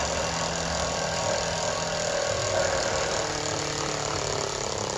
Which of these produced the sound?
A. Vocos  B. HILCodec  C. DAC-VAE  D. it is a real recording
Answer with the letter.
D